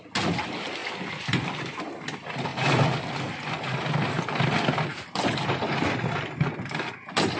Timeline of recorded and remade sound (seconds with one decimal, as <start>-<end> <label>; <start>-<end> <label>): 0.0-0.8 recorded; 0.8-1.8 remade; 1.8-4.9 recorded; 4.9-6.0 remade; 6.0-7.4 recorded